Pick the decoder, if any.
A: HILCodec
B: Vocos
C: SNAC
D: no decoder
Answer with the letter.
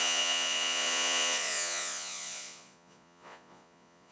B